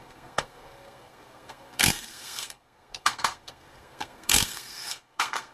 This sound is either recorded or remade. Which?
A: remade